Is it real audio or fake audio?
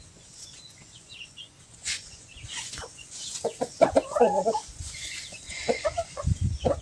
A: fake